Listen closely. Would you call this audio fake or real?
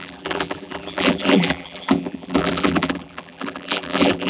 fake